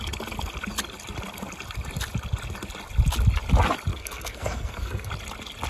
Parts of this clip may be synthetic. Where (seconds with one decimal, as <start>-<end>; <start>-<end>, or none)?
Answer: 3.9-5.1